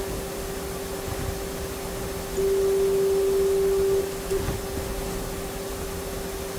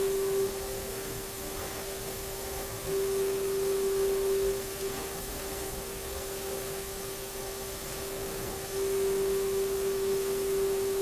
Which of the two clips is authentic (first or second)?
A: first